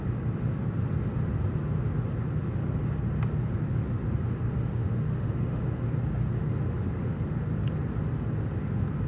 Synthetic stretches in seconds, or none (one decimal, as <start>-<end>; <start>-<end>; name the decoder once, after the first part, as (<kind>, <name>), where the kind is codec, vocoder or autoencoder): 4.5-5.6 (autoencoder, DAC-VAE)